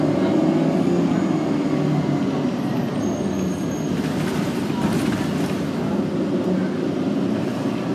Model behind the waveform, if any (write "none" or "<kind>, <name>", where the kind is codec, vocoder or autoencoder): none